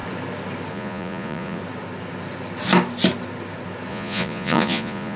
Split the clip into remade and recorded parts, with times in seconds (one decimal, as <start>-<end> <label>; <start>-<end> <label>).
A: 0.0-0.7 recorded; 0.7-1.6 remade; 1.6-3.9 recorded; 3.9-5.2 remade